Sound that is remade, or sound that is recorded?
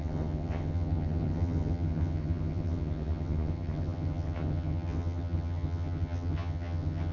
remade